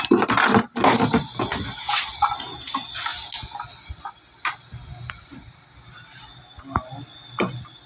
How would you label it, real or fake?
real